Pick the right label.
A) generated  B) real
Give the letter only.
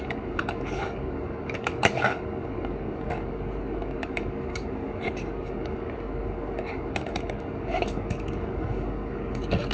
A